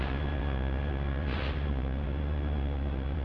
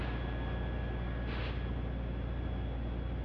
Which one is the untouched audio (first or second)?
second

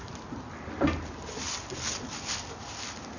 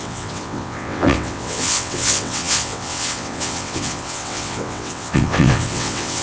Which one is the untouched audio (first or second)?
first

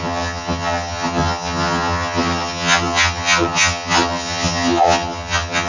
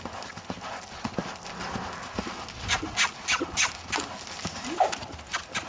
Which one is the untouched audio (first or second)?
second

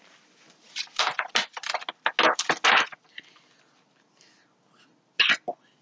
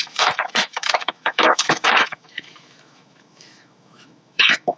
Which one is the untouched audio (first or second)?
first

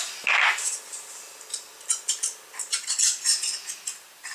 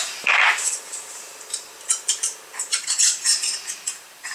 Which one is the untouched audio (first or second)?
first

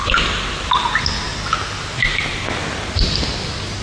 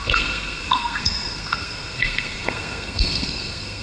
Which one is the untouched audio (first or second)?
first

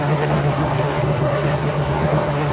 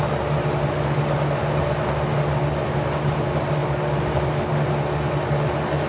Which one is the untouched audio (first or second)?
second